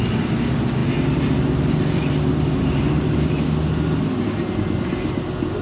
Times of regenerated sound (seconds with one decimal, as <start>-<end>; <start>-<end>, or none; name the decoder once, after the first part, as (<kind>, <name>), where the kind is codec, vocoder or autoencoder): none